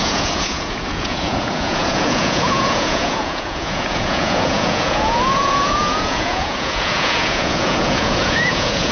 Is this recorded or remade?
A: remade